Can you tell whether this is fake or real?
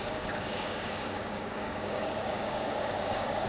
fake